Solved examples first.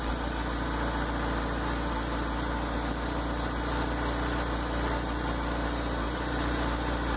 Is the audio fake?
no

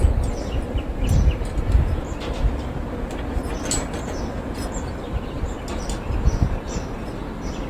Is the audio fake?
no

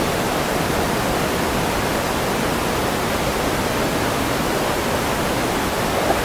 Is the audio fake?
no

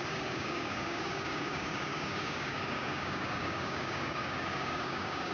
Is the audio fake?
yes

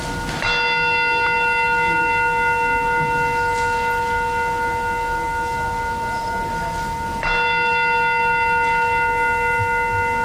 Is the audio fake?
no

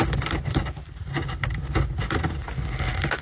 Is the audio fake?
no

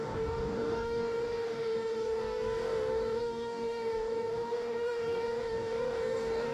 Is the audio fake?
yes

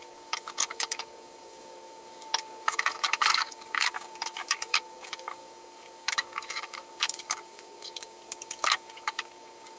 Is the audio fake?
yes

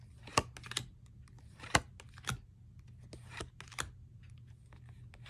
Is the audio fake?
no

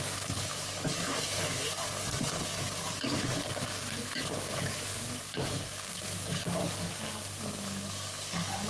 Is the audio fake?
yes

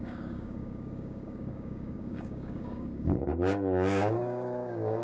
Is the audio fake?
yes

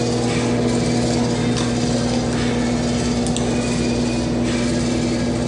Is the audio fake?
no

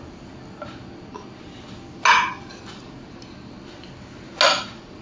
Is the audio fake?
no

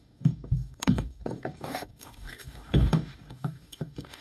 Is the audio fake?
yes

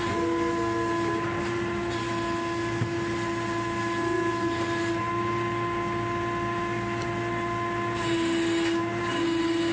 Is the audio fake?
no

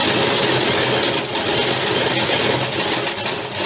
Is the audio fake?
no